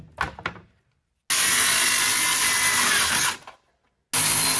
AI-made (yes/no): no